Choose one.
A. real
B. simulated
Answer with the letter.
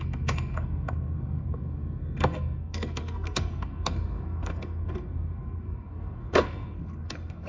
B